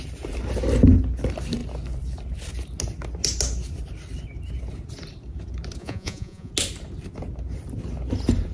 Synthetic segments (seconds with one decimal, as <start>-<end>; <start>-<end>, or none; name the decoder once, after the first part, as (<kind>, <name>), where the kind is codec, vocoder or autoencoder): 5.8-6.5 (vocoder, Vocos)